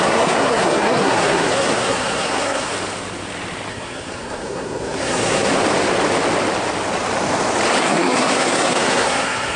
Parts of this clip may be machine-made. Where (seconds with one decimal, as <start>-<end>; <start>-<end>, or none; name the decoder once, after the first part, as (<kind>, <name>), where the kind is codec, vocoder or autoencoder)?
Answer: 0.0-2.7 (codec, SNAC); 3.7-5.5; 7.8-9.6